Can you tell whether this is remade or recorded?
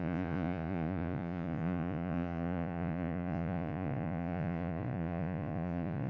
remade